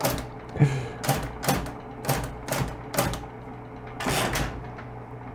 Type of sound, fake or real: real